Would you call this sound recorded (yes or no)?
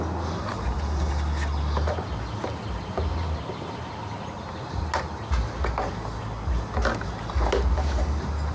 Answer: yes